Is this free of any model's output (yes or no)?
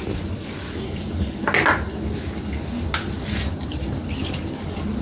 yes